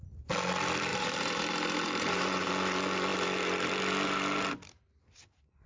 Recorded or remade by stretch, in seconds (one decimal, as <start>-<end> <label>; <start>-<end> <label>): 0.0-0.9 recorded; 0.9-2.5 remade; 2.5-5.7 recorded